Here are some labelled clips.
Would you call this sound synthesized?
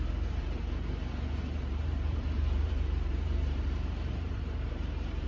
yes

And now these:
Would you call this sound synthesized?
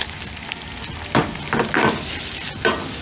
no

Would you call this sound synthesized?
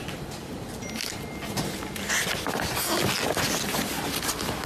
no